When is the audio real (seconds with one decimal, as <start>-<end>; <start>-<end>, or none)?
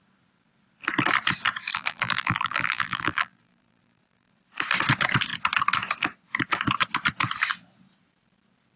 0.0-1.7; 4.3-8.8